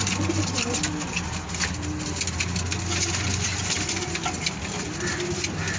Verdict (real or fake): real